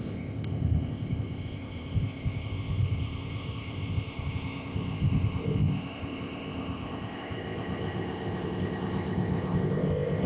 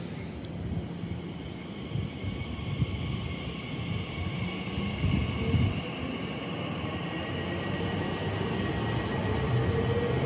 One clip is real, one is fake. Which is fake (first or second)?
first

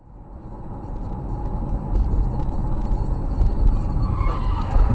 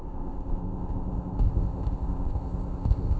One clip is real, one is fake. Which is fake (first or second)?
second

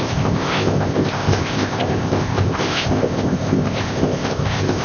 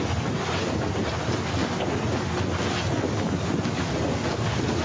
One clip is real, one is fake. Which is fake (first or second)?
first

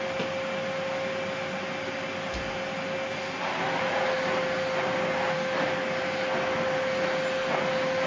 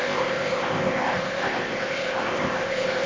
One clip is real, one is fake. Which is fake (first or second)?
second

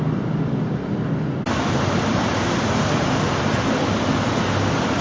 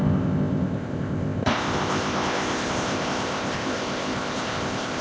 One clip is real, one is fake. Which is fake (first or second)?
second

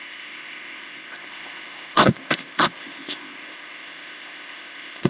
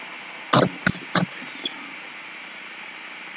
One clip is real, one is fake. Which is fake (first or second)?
first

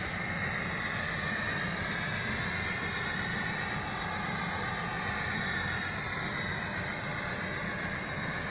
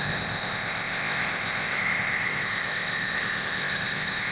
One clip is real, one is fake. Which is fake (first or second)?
second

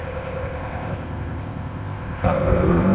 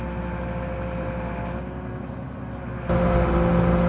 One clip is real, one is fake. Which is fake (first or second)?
first